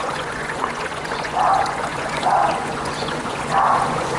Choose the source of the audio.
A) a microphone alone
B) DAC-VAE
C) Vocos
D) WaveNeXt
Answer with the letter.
C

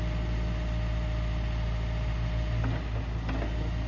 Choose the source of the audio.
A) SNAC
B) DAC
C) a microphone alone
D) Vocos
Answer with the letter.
C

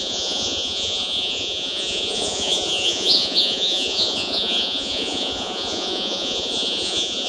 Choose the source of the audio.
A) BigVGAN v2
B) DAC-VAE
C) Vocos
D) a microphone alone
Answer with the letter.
C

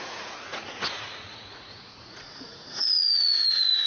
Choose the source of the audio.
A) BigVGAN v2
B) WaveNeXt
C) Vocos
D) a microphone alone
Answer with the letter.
C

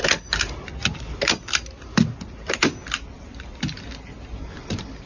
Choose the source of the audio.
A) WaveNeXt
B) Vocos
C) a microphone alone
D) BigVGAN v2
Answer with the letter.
C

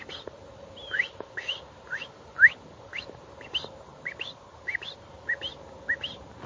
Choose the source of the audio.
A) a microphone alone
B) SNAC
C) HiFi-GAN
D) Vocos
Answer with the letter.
A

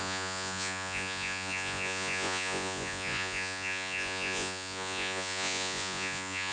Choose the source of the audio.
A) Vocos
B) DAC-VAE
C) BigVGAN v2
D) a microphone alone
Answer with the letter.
A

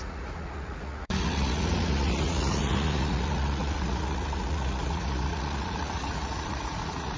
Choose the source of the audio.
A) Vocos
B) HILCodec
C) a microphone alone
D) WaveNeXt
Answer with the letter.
A